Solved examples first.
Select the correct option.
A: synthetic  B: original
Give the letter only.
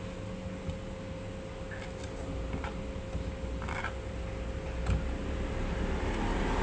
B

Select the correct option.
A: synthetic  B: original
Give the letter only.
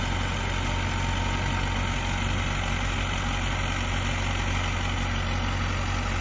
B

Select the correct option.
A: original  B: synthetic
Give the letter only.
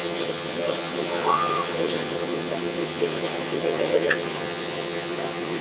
B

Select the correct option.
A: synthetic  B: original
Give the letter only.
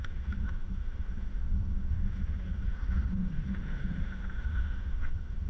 A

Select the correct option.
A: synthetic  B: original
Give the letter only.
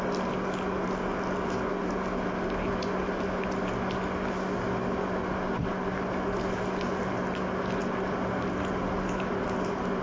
B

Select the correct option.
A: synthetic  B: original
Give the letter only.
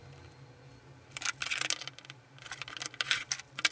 B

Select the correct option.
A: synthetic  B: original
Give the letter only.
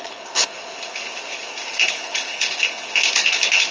A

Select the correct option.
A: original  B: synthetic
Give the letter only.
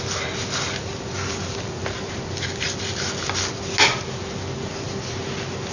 A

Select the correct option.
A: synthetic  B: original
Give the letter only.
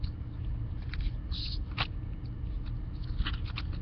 B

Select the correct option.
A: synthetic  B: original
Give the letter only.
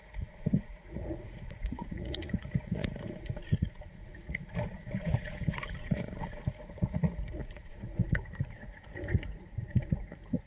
A